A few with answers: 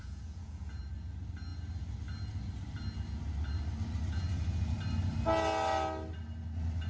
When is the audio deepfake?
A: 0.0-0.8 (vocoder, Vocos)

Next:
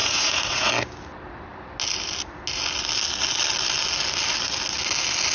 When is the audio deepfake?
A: 0.0-0.7 (vocoder, Vocos)

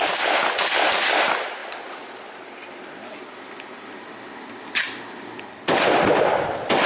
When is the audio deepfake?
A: none

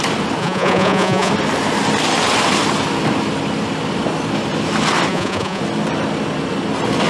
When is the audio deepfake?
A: 0.4-1.3 (vocoder, Vocos); 5.1-5.6

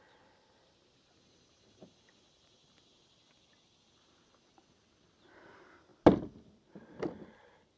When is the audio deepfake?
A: none

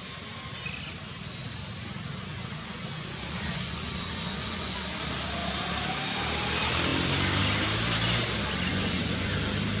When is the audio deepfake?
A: 2.3-4.8 (vocoder, Vocos); 8.7-9.3

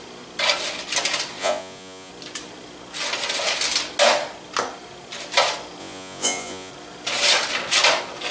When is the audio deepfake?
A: 1.4-2.1 (vocoder, Vocos); 5.8-6.7